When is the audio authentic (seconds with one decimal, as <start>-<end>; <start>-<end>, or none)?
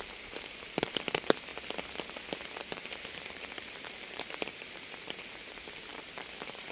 1.5-2.6